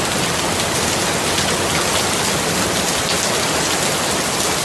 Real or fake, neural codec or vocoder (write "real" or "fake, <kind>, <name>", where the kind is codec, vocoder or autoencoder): real